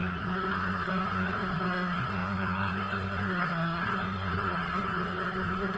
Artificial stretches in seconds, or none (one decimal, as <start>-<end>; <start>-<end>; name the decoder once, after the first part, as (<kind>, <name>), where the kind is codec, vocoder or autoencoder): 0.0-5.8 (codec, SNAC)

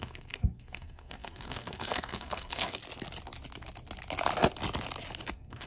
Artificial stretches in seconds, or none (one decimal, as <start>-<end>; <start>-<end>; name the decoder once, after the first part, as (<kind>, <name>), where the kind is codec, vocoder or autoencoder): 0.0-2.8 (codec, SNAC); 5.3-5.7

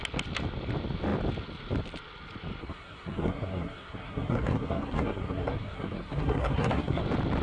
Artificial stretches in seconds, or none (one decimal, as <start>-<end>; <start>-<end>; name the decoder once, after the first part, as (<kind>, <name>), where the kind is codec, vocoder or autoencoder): 2.6-7.0 (codec, SNAC)

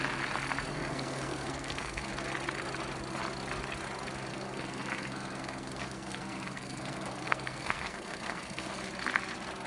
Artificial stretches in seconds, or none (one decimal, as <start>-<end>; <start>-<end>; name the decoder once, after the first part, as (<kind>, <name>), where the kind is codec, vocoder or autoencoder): 0.7-2.1 (codec, SNAC); 4.3-8.8

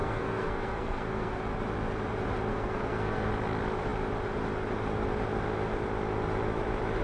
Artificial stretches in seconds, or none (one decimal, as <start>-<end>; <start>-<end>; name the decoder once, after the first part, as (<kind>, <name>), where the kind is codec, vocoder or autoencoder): 0.0-1.4 (codec, SNAC); 2.5-3.3